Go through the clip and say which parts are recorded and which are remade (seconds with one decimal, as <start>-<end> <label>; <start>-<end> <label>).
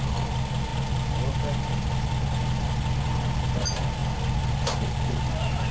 0.0-5.7 recorded